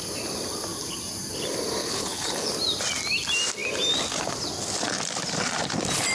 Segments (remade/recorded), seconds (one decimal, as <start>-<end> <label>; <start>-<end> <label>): 0.0-1.8 recorded; 1.8-2.5 remade; 2.5-6.1 recorded